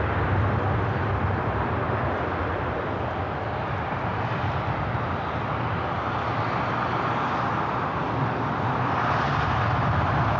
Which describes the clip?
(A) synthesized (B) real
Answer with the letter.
B